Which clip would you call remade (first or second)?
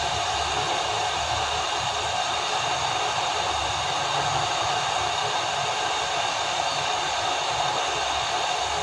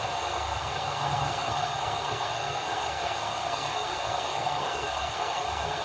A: second